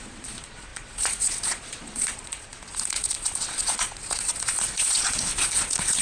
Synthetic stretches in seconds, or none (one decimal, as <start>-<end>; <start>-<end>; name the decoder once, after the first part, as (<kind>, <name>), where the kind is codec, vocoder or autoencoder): 0.0-6.0 (vocoder, Vocos)